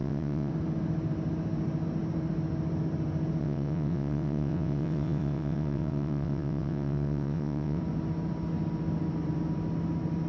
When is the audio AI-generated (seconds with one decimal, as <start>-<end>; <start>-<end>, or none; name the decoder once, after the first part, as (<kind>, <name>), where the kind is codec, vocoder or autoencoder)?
0.0-0.5 (vocoder, WaveNeXt); 3.4-7.8